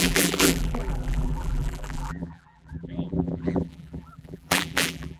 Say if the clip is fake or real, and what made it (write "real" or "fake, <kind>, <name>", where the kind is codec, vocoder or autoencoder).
fake, vocoder, BigVGAN v2